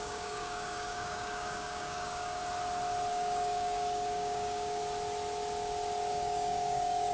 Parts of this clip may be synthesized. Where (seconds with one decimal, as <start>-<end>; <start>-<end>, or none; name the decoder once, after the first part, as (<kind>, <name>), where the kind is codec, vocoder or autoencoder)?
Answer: 0.0-2.4 (codec, DAC); 3.1-4.8; 6.1-7.1